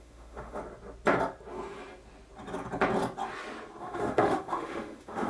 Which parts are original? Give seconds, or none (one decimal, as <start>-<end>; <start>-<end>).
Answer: 0.6-3.8